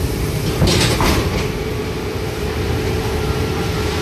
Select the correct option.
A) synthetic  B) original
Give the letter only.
A